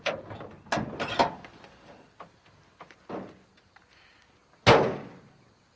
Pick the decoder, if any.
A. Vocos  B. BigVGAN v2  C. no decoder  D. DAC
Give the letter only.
C